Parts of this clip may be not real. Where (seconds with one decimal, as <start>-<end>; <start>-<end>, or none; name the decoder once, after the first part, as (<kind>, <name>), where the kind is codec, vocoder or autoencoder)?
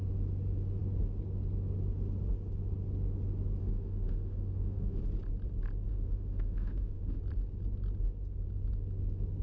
3.6-5.0 (autoencoder, DAC-VAE); 5.9-7.2